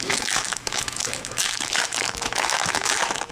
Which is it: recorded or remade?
remade